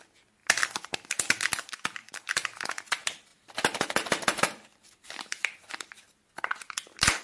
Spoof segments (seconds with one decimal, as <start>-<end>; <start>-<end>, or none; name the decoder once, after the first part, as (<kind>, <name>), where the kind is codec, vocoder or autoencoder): 2.0-2.6 (vocoder, BigVGAN v2)

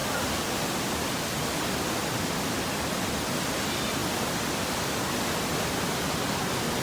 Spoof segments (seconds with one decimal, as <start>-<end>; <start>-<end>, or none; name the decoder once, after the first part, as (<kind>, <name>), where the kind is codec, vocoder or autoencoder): none

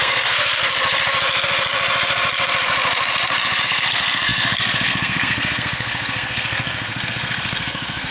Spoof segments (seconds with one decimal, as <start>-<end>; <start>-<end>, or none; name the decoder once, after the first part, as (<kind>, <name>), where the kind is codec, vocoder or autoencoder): 0.0-0.6 (codec, SNAC); 3.6-8.1

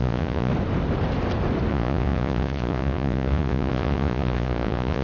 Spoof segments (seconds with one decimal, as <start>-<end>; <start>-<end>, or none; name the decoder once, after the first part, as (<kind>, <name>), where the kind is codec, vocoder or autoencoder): 0.0-0.5 (vocoder, Vocos); 1.7-5.0

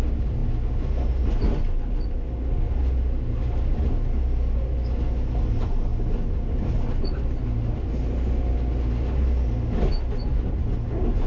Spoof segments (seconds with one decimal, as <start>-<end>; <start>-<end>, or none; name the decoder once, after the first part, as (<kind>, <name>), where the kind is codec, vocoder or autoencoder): none